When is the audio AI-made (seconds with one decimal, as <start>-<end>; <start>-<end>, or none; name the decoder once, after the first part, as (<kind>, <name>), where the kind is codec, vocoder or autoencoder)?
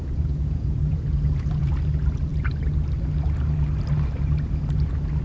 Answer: 0.0-1.7 (vocoder, Vocos)